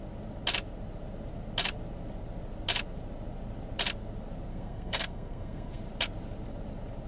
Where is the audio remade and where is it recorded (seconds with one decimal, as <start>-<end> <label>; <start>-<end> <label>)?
0.0-4.5 recorded; 4.5-5.8 remade; 5.8-7.1 recorded